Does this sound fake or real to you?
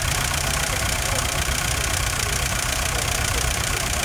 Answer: fake